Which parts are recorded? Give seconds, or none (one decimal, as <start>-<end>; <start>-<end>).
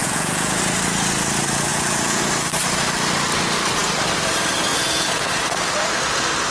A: 0.6-1.7; 2.2-4.7; 5.3-6.5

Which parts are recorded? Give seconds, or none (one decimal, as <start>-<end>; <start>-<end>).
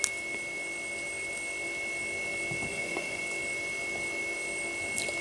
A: 0.0-2.7; 3.2-5.2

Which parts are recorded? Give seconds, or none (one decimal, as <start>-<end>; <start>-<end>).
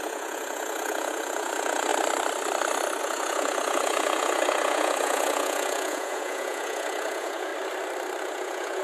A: 1.9-3.0; 7.5-8.2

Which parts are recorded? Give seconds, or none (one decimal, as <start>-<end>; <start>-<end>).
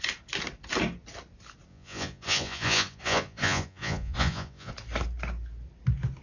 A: 0.0-1.7; 4.7-6.2